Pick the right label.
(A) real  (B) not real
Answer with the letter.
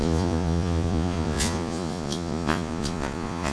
B